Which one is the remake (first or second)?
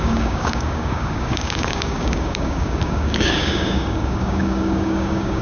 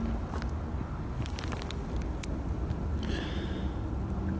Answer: first